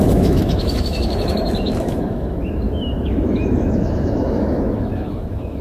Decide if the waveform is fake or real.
fake